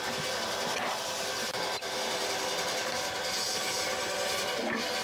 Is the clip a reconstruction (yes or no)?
no